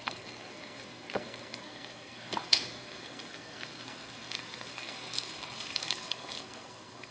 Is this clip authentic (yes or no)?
no